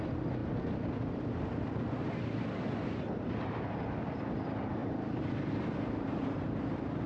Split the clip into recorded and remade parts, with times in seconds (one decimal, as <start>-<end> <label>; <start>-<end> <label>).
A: 0.0-4.8 recorded; 4.8-5.5 remade; 5.5-7.1 recorded